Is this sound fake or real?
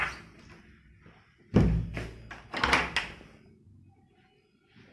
real